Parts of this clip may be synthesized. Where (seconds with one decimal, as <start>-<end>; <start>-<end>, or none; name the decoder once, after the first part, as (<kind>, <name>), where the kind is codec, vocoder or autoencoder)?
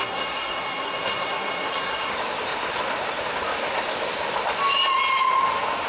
0.0-2.1 (codec, SNAC)